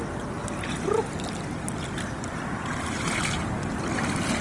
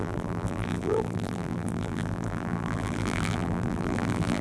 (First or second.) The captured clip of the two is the first